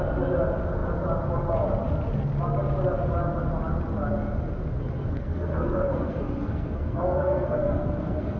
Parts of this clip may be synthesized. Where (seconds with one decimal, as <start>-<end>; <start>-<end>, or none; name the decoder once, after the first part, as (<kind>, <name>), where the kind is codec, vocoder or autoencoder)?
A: 5.0-8.4 (codec, SNAC)